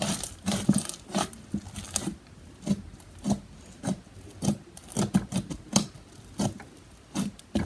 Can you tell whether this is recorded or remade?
recorded